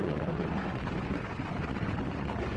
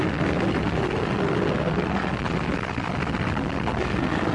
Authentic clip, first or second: second